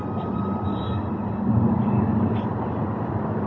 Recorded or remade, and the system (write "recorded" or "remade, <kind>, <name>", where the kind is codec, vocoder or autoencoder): recorded